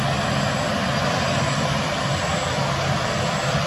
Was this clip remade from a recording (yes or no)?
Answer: no